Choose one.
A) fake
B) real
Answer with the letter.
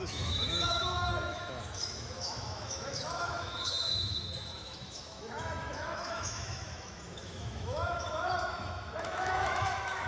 A